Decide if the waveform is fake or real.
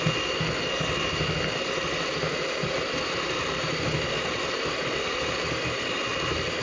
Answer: real